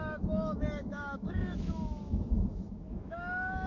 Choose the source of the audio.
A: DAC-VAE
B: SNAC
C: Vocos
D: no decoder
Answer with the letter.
A